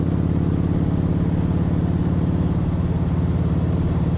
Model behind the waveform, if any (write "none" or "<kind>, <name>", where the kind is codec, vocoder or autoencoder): none